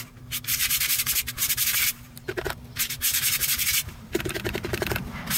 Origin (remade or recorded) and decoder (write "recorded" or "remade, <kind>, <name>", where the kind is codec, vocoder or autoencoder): remade, vocoder, BigVGAN v2